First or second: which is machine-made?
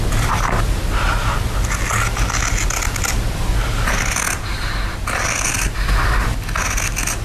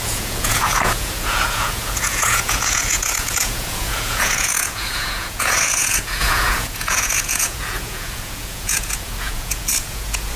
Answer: second